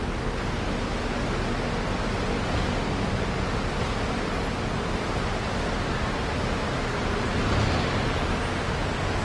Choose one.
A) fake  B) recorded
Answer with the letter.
B